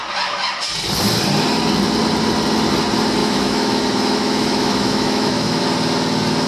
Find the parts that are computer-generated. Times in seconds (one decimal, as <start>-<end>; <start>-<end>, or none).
3.2-3.8; 4.2-5.6